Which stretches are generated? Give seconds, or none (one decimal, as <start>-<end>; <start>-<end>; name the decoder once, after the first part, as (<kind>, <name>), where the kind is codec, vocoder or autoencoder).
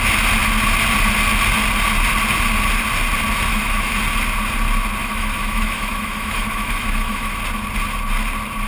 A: 3.5-4.0 (autoencoder, DAC-VAE); 5.0-7.4